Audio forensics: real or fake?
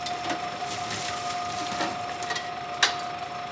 real